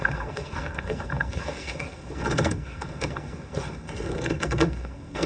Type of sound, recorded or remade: remade